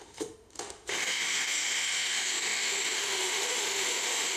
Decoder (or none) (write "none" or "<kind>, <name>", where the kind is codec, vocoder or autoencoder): autoencoder, DAC-VAE